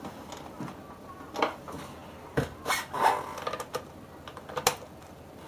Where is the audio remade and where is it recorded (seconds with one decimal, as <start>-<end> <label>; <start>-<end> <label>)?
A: 0.0-5.5 recorded